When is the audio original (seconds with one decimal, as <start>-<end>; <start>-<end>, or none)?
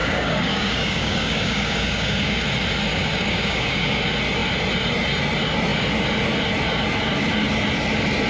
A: 2.4-2.9; 4.0-8.3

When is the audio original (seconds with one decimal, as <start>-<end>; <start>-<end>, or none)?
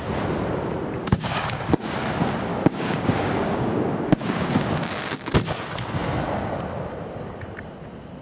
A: 0.0-1.0; 1.6-2.5; 4.7-8.2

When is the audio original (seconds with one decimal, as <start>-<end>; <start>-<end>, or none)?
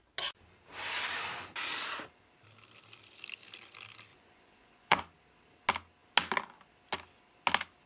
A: 0.0-4.1; 5.0-7.9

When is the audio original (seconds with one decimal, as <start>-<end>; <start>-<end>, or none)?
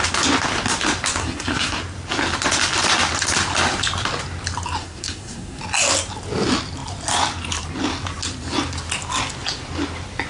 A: 0.0-1.2; 1.8-4.8; 5.6-10.3